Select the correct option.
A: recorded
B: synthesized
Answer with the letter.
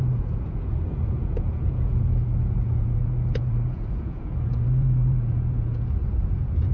B